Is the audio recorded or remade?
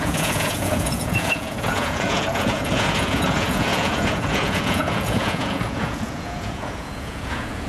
remade